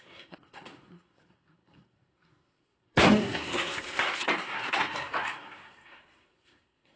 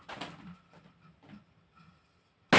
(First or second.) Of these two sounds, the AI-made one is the first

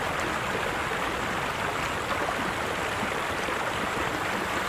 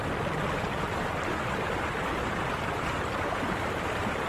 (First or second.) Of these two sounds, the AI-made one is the second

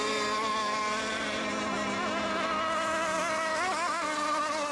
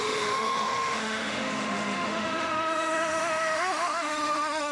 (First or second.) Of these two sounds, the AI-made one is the second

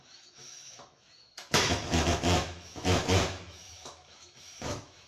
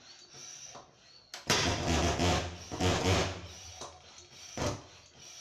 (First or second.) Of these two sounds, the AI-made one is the first